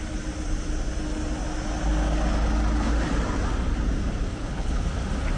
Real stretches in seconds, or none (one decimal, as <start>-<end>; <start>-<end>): 0.0-4.3; 4.9-5.4